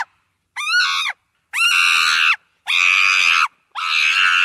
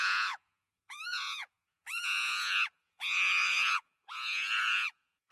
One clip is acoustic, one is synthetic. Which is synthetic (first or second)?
second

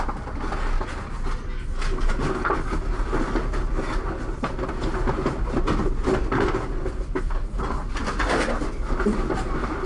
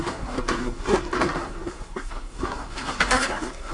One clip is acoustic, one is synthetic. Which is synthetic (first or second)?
second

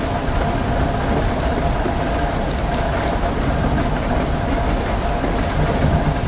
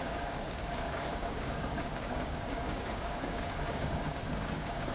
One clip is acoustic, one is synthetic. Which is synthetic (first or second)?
second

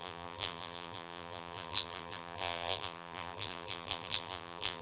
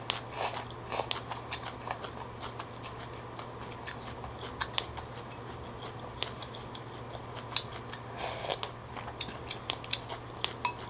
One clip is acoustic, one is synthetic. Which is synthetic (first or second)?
first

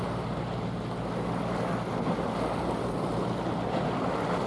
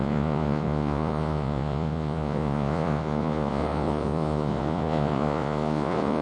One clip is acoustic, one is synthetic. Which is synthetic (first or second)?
second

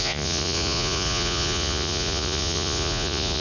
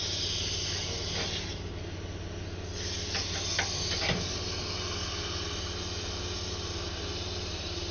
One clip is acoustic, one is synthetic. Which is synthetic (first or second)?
first